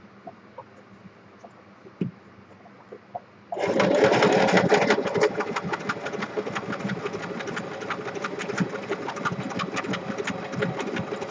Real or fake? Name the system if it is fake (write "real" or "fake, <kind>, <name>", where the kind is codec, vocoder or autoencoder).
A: real